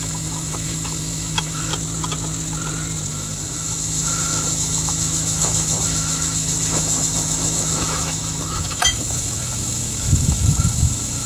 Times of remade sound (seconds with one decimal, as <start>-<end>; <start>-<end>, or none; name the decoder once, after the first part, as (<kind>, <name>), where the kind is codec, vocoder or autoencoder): 0.0-1.7 (autoencoder, DAC-VAE); 3.1-11.3